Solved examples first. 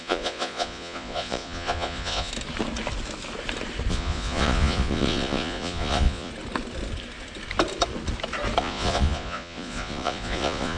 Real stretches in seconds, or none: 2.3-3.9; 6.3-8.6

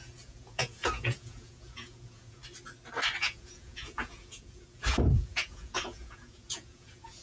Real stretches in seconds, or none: 2.4-3.2

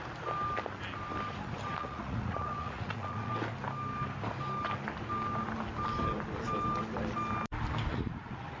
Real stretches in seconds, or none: 0.0-1.7; 3.3-7.9

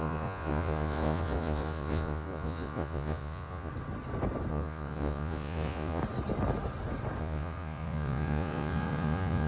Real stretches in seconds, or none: 3.7-4.5; 6.0-7.2

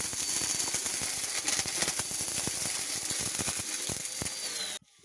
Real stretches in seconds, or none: 0.0-5.0

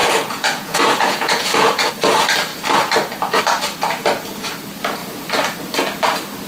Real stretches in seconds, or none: 1.9-6.5